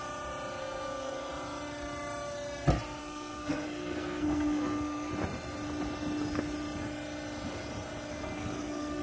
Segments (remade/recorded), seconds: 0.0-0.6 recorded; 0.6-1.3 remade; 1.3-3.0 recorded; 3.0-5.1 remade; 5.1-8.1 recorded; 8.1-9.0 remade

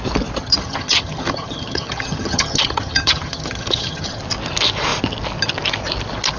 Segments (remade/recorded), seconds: 0.0-0.4 recorded; 0.4-4.2 remade; 4.2-6.4 recorded